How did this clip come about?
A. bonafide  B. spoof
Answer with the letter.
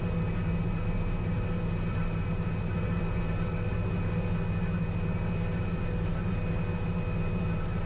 A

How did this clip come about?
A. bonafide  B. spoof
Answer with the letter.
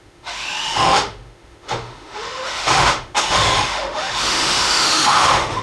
B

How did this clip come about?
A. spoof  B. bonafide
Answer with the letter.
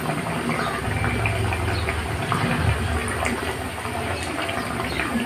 B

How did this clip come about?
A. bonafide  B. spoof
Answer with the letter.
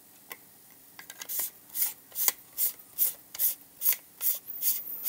A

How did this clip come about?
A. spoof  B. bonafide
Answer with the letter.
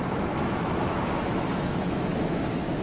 A